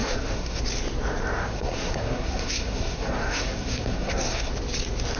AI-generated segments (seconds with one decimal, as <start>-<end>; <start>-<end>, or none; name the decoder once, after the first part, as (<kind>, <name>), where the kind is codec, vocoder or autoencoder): 0.0-0.6 (codec, SNAC); 1.4-4.5